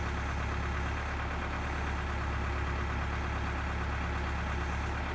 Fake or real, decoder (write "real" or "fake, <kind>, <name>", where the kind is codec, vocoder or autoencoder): real